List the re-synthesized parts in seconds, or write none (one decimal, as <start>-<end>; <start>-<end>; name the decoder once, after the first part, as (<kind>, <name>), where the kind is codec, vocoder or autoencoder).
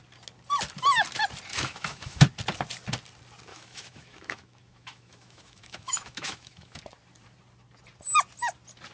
1.5-2.2 (autoencoder, DAC-VAE); 3.5-6.8